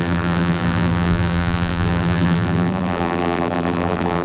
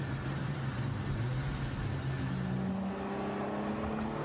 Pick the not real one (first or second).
first